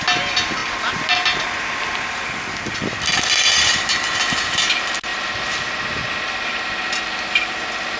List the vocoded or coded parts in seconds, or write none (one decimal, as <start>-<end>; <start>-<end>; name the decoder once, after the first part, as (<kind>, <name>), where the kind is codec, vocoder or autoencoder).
none